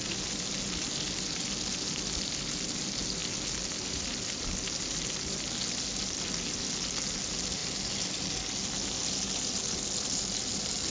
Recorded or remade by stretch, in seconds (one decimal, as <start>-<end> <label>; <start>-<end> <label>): 0.0-10.9 recorded